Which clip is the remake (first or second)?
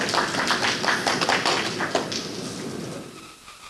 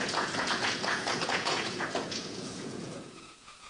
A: second